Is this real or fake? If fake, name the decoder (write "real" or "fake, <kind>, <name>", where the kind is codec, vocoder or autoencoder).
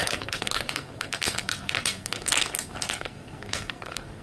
fake, codec, SNAC